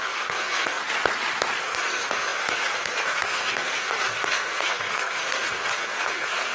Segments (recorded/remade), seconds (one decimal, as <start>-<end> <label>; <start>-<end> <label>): 0.0-0.8 remade; 0.8-1.6 recorded; 1.6-6.5 remade